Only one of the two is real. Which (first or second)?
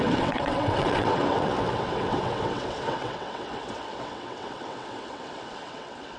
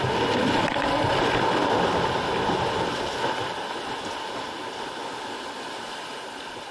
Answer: second